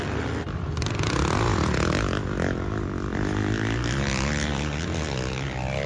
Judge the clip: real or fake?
real